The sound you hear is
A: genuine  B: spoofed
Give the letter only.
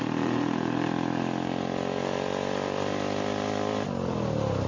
A